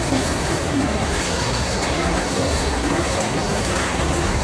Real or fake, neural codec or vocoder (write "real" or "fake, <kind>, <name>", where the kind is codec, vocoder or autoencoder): fake, codec, SNAC